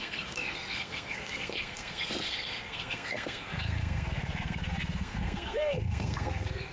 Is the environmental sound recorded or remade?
remade